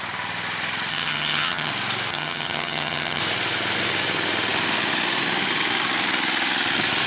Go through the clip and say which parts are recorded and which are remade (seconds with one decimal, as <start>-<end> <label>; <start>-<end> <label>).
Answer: 0.0-0.9 recorded; 0.9-1.7 remade; 1.7-2.1 recorded; 2.1-3.2 remade; 3.2-7.1 recorded